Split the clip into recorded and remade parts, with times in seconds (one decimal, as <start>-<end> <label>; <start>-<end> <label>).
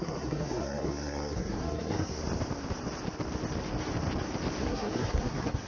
0.0-2.1 remade; 2.1-4.6 recorded; 4.6-5.7 remade